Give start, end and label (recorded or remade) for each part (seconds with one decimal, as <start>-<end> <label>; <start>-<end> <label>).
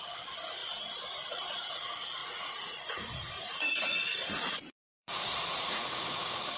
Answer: 0.0-2.2 recorded; 2.2-6.6 remade